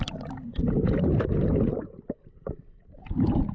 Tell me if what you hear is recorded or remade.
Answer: recorded